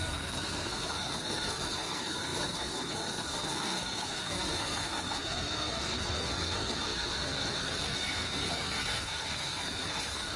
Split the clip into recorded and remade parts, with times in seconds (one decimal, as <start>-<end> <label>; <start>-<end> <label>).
0.0-10.4 remade